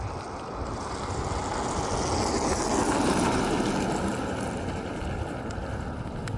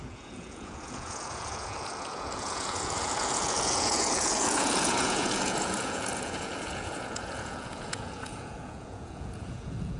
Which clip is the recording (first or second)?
first